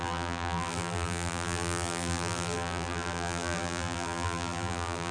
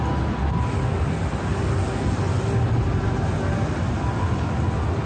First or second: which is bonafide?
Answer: second